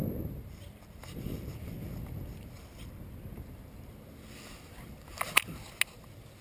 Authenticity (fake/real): real